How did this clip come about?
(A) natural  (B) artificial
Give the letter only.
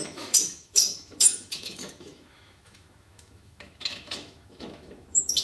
B